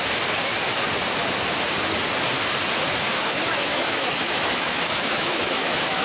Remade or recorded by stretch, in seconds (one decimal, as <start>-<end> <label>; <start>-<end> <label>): 0.0-3.1 recorded; 3.1-6.0 remade